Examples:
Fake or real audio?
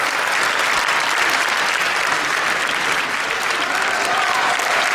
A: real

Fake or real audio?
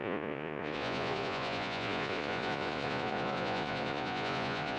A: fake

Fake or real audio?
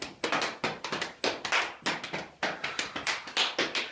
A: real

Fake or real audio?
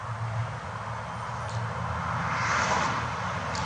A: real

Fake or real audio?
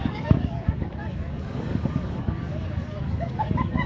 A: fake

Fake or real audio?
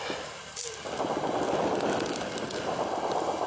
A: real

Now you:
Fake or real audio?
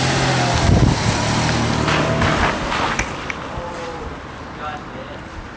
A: real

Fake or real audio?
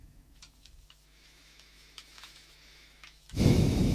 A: fake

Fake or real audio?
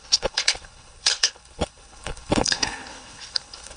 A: fake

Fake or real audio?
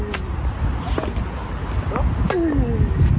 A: real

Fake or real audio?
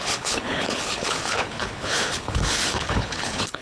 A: fake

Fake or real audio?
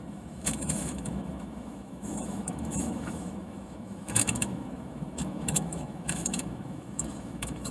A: fake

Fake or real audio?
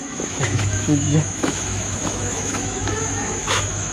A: fake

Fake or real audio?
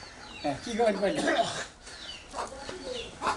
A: real